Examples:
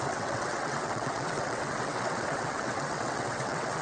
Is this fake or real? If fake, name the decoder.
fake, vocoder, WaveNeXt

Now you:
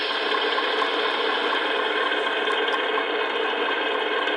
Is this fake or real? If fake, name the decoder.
real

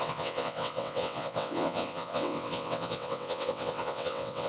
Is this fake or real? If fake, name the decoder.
fake, vocoder, WaveNeXt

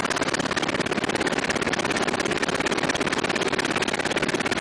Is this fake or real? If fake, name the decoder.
real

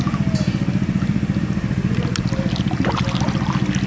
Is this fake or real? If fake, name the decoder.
real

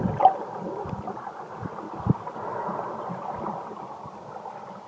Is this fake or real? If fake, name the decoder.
real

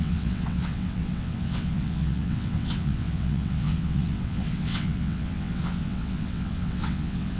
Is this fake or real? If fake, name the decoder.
fake, vocoder, WaveNeXt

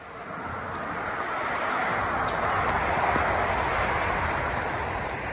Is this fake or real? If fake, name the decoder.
real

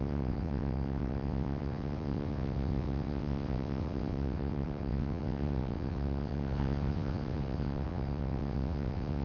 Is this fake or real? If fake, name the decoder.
fake, vocoder, WaveNeXt